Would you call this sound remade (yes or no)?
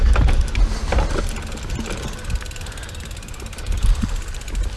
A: no